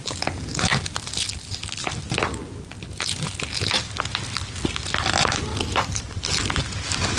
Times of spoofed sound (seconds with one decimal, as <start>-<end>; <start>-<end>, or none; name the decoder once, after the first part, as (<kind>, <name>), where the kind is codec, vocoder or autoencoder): 5.5-6.1 (vocoder, BigVGAN v2)